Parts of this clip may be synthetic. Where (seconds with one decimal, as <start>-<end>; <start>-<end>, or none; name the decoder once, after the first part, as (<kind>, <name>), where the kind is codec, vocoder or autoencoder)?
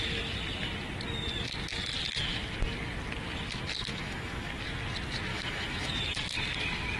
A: 3.9-4.6 (autoencoder, DAC-VAE); 5.3-5.9